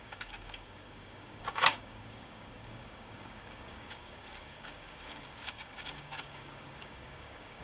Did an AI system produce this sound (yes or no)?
yes